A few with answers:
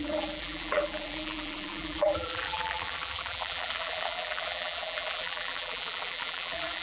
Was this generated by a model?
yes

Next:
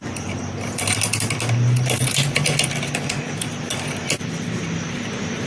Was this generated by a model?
no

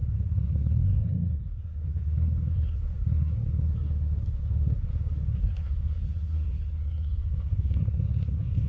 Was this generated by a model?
yes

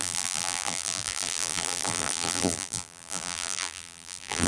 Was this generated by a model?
yes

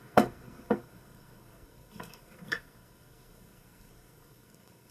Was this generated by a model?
yes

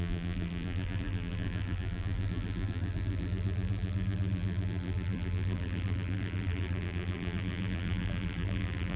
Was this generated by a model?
yes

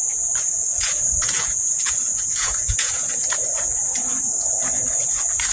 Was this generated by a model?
yes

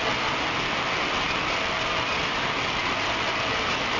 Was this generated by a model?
no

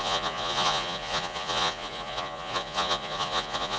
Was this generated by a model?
yes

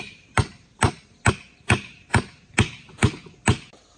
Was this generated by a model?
no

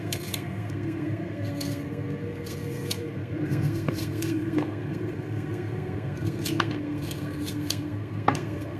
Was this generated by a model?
yes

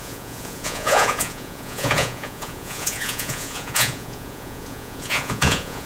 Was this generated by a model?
yes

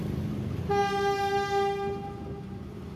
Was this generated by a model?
no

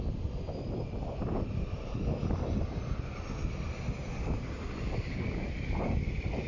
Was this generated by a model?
yes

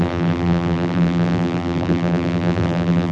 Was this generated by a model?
yes